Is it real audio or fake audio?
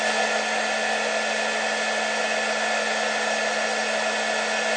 real